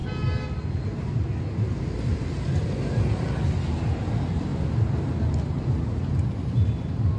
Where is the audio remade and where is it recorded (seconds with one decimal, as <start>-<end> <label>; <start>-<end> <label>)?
0.0-7.2 recorded